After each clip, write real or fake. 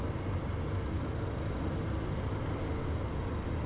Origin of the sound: real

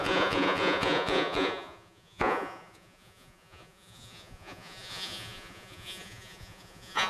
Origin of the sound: fake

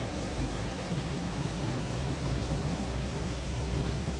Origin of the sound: fake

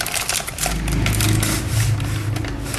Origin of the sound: real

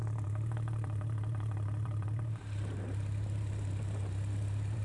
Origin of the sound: fake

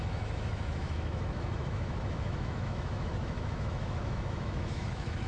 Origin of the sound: fake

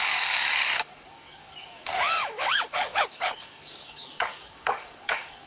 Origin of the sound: fake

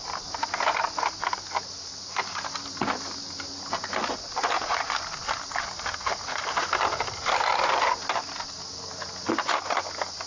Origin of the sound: real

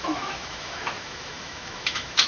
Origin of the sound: fake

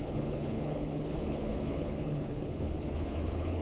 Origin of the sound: fake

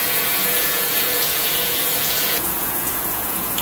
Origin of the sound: fake